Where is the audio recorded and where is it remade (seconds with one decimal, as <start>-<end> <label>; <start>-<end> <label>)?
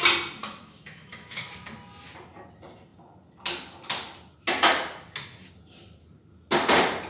0.0-0.4 recorded; 0.4-1.5 remade; 1.5-7.1 recorded